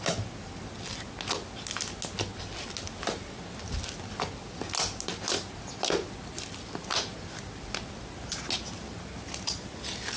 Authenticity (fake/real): real